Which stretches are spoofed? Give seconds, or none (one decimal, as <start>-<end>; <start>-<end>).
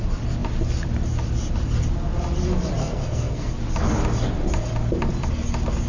2.8-3.5